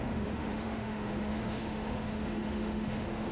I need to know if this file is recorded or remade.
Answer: remade